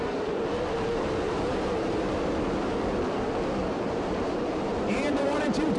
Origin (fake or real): fake